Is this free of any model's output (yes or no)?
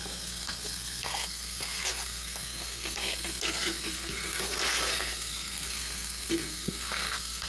no